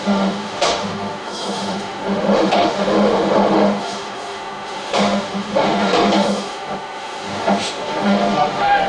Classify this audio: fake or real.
fake